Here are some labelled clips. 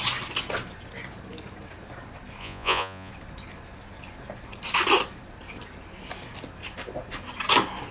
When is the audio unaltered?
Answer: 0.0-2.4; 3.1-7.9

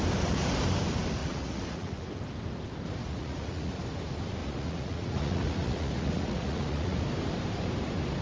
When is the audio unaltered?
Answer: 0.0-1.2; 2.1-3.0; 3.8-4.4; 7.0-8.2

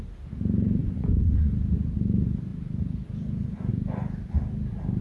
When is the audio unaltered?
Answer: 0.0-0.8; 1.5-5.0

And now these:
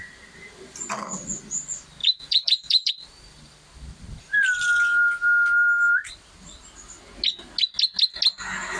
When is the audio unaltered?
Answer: 0.0-2.0; 2.9-8.8

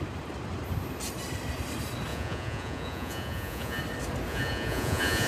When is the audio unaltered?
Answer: 0.0-2.1; 3.8-4.3

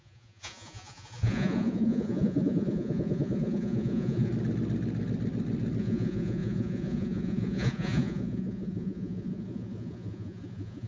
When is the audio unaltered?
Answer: 4.3-5.8